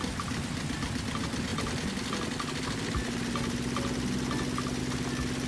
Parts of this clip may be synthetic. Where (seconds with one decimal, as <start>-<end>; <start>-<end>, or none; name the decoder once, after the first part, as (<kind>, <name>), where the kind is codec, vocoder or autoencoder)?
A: none